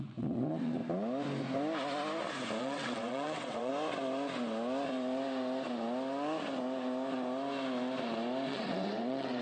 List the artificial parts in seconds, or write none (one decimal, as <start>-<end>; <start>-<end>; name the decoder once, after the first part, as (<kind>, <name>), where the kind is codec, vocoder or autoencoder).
0.0-0.8 (vocoder, WaveNeXt); 2.6-3.7; 8.5-9.4